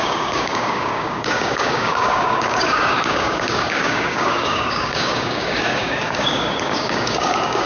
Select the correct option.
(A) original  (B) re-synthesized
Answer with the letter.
B